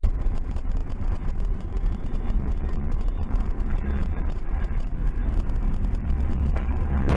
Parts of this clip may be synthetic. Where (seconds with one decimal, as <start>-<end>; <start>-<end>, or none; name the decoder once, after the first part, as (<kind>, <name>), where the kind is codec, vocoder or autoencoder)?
0.0-5.0 (vocoder, Vocos); 6.0-7.2